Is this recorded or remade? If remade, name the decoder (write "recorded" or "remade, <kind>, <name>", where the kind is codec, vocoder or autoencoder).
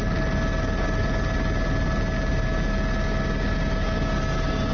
recorded